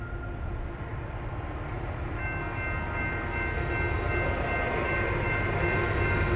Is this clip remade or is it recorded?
recorded